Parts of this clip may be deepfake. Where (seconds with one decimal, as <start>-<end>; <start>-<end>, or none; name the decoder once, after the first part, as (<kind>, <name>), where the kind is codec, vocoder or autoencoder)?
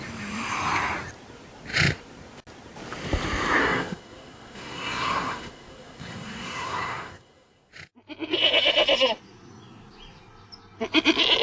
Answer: 3.6-7.7 (codec, SNAC)